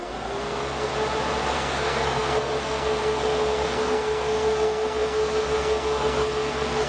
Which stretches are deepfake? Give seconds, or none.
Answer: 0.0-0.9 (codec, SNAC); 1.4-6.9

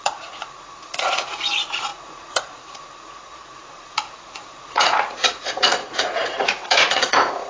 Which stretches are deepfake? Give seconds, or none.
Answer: 0.0-7.5 (vocoder, Vocos)

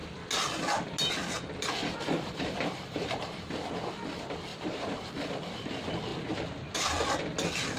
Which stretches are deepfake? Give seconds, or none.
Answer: 1.8-3.5 (vocoder, BigVGAN v2); 4.5-5.1

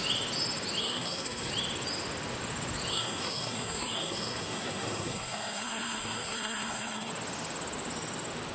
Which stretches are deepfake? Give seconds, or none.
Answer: 0.8-1.5 (codec, SNAC); 2.9-7.1

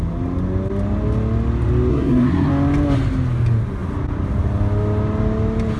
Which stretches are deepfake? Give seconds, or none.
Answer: 1.9-2.5 (codec, SNAC)

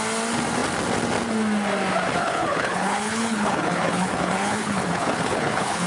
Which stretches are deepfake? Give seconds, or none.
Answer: 2.2-5.9 (codec, HILCodec)